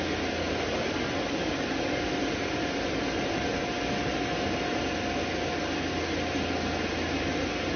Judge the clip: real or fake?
real